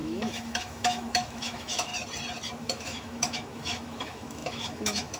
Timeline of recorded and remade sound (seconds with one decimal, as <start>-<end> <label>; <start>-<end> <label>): 0.0-1.9 remade; 1.9-2.6 recorded; 2.6-5.2 remade